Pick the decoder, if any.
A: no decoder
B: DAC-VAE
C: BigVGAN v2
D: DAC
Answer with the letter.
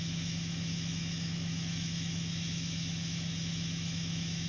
B